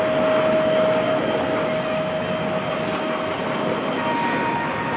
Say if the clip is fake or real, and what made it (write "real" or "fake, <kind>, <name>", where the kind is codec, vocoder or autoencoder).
real